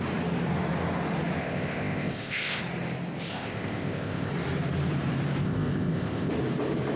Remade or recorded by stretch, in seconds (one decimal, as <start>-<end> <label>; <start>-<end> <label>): 0.0-1.4 recorded; 1.4-2.6 remade; 2.6-3.3 recorded; 3.3-4.3 remade; 4.3-5.4 recorded; 5.4-6.3 remade; 6.3-7.0 recorded

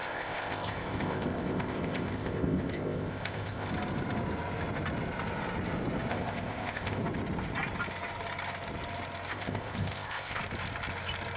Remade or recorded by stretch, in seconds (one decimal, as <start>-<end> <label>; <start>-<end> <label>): 0.0-3.7 remade; 3.7-6.1 recorded; 6.1-7.0 remade; 7.0-9.3 recorded; 9.3-10.4 remade; 10.4-11.4 recorded

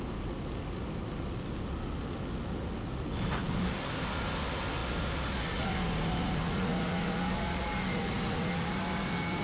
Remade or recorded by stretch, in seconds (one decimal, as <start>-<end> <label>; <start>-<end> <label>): 0.0-9.4 recorded

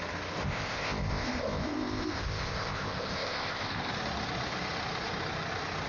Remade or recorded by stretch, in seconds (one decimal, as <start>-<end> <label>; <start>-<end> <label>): 0.0-0.4 recorded; 0.4-3.9 remade; 3.9-5.9 recorded